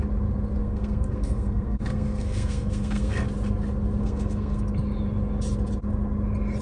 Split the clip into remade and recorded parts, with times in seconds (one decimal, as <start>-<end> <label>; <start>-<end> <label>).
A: 0.0-0.6 recorded; 0.6-3.2 remade; 3.2-4.0 recorded; 4.0-4.7 remade; 4.7-6.6 recorded